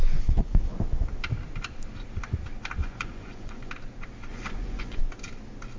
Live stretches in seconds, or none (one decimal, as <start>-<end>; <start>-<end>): 0.6-2.8; 3.7-4.3; 5.0-5.8